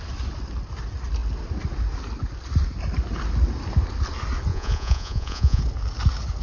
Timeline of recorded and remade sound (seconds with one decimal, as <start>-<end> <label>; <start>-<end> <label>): 0.0-4.5 recorded; 4.5-5.6 remade; 5.6-6.4 recorded